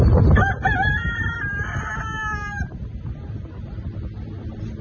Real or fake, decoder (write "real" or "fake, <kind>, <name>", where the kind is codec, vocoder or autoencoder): fake, vocoder, BigVGAN v2